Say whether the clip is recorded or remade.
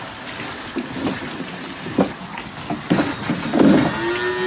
recorded